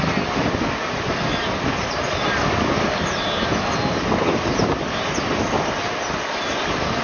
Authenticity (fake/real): real